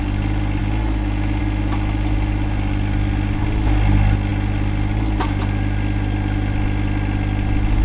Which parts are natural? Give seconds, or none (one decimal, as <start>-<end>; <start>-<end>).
0.0-7.8